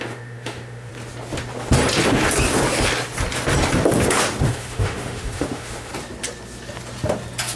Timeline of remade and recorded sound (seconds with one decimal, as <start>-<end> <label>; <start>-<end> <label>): 0.0-0.9 remade; 0.9-4.4 recorded; 4.4-5.9 remade; 5.9-7.6 recorded